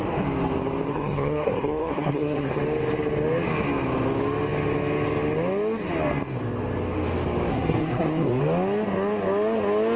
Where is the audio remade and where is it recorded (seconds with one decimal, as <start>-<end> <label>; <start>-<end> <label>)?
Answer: 0.0-0.9 recorded; 0.9-2.6 remade; 2.6-7.5 recorded; 7.5-8.4 remade; 8.4-10.0 recorded

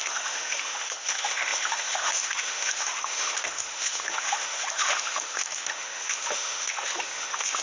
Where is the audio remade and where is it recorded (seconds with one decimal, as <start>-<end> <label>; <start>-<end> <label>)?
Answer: 0.0-7.6 remade

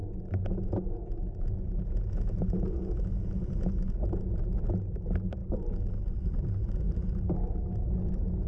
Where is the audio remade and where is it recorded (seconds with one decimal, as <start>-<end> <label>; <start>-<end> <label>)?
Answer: 0.0-4.6 remade; 4.6-8.5 recorded

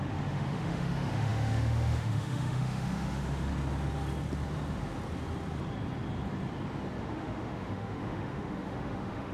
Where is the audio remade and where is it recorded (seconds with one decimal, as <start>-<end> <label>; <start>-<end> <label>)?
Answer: 0.0-3.5 remade; 3.5-7.0 recorded; 7.0-9.3 remade